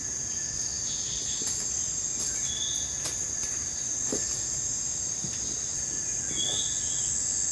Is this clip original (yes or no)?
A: yes